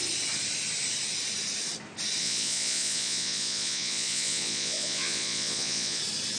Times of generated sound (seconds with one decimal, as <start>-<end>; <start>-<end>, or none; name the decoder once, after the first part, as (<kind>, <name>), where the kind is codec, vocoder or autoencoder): 2.2-6.0 (vocoder, Vocos)